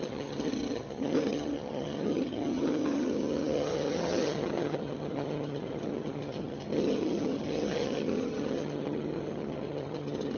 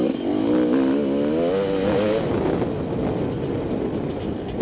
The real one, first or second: second